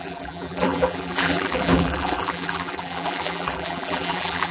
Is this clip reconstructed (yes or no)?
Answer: yes